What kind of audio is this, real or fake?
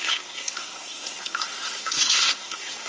fake